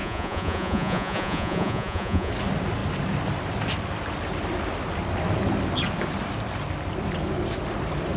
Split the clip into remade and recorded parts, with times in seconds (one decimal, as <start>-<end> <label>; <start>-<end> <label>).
0.0-2.3 remade; 2.3-8.2 recorded